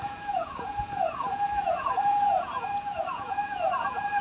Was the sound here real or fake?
fake